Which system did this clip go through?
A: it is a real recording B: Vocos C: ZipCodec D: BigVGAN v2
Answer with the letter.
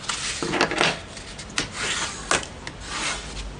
A